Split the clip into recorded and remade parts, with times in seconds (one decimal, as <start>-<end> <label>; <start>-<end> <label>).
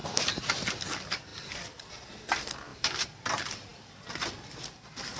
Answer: 0.0-0.5 remade; 0.5-1.3 recorded; 1.3-1.9 remade; 1.9-2.7 recorded; 2.7-3.2 remade; 3.2-5.2 recorded